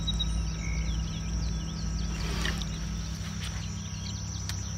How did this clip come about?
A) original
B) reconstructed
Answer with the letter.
A